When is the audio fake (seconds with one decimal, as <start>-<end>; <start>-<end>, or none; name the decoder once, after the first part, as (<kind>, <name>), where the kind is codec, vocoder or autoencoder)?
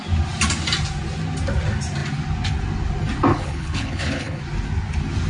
3.3-4.4 (codec, HILCodec)